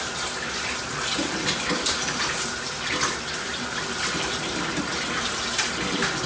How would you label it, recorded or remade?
recorded